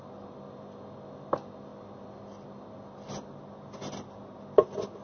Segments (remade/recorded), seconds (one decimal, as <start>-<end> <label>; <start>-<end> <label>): 0.0-5.0 recorded